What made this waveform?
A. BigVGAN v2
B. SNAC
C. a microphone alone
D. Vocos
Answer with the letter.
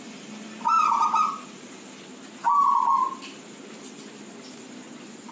C